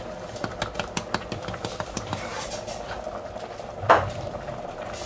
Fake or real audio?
fake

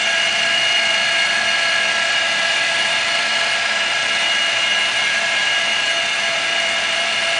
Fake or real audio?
fake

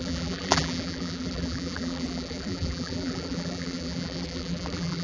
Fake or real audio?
fake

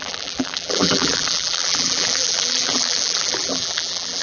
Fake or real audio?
fake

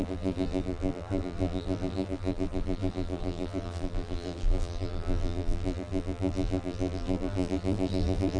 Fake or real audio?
fake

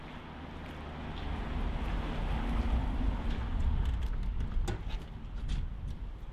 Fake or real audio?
real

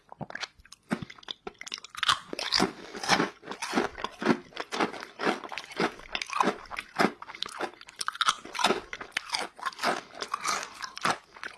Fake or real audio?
real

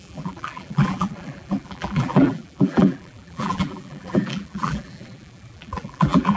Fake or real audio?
fake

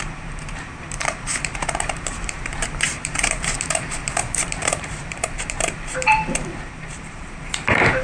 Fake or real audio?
fake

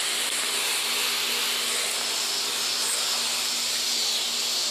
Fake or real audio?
fake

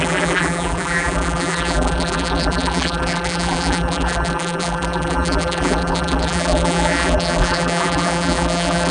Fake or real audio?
fake